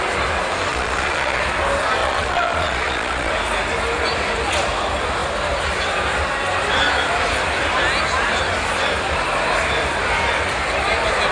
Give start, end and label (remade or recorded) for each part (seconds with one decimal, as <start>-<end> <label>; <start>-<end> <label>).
0.0-0.7 recorded; 0.7-1.4 remade; 1.4-2.0 recorded; 2.0-3.3 remade; 3.3-11.3 recorded